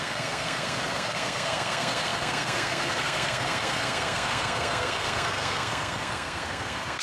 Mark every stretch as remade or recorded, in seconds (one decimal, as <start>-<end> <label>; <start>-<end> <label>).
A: 0.0-7.0 remade